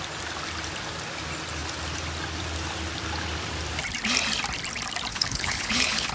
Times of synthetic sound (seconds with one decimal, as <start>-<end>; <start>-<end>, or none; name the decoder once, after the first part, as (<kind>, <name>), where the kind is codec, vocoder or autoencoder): 5.1-6.1 (codec, HILCodec)